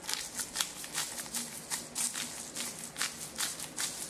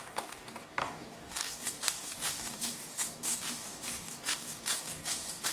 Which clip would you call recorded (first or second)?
first